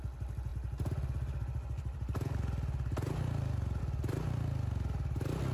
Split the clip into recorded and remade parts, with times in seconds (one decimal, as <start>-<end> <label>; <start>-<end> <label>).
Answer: 0.0-5.5 recorded